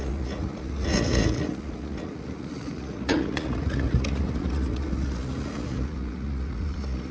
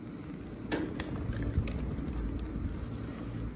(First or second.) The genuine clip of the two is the second